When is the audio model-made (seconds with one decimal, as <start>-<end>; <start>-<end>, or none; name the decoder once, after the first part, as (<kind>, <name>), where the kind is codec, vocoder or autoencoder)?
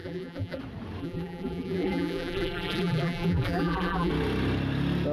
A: 0.0-0.6 (vocoder, BigVGAN v2); 1.0-4.1